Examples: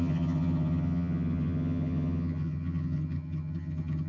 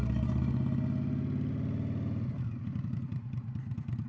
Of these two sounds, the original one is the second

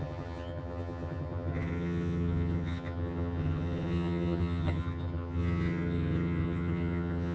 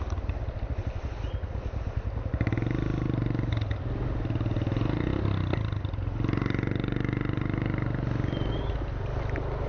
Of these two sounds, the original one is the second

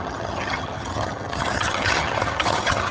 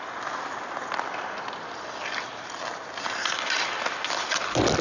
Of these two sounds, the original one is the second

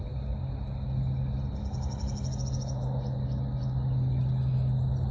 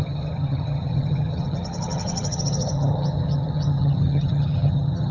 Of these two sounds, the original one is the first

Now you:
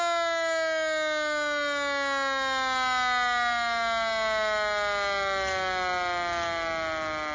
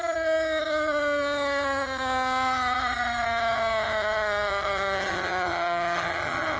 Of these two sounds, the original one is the first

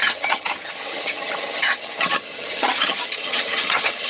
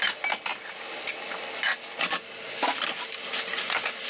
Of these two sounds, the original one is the second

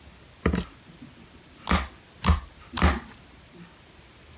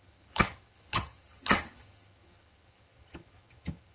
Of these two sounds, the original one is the first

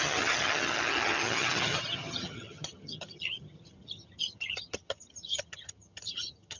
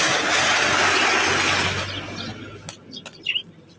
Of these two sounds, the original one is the second